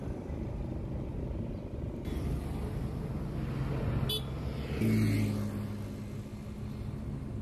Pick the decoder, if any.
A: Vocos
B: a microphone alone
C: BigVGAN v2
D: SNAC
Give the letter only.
B